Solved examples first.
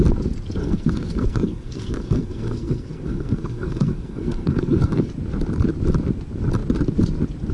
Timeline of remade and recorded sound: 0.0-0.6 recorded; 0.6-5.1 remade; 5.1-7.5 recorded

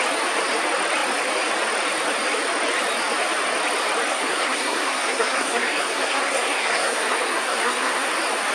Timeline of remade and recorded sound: 0.0-4.1 recorded; 4.1-8.1 remade; 8.1-8.5 recorded